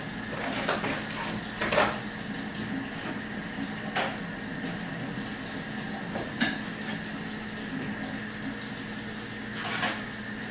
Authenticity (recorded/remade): recorded